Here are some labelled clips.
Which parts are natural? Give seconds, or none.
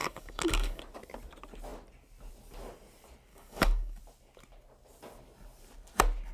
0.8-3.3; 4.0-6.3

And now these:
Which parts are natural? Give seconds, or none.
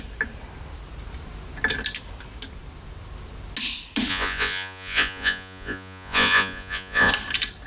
0.0-4.1; 7.1-7.7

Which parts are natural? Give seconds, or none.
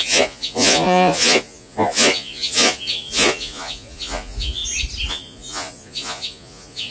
4.6-5.1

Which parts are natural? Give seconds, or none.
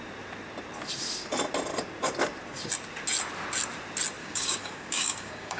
0.0-4.2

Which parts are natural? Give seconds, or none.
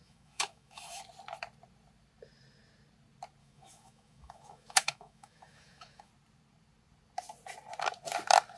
1.0-3.4; 6.1-8.6